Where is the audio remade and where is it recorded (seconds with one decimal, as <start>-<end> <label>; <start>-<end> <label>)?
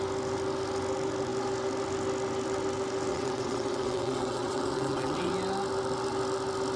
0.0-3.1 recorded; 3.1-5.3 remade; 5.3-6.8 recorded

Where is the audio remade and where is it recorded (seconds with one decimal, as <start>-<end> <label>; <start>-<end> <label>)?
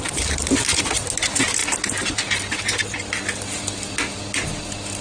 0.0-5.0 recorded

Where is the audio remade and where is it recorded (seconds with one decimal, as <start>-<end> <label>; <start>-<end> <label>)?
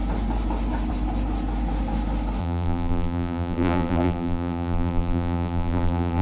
0.0-2.4 recorded; 2.4-6.2 remade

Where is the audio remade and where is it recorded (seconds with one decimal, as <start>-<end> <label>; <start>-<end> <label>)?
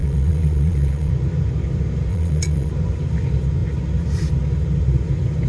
0.0-1.1 remade; 1.1-2.1 recorded; 2.1-2.7 remade; 2.7-5.5 recorded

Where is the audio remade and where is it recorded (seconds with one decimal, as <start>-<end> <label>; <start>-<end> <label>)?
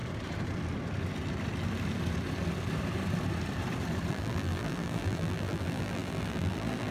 0.0-4.1 recorded; 4.1-6.9 remade